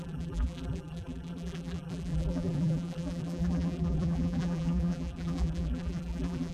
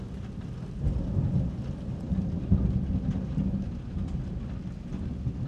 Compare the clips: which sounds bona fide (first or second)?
second